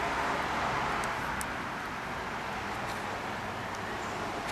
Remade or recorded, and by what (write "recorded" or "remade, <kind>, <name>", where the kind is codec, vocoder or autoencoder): recorded